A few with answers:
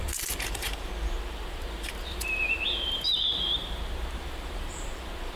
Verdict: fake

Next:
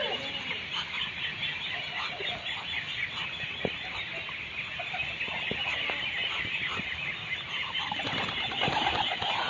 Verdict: real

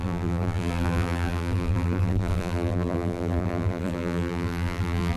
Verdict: fake